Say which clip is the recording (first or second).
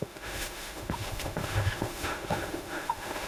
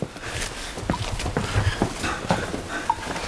second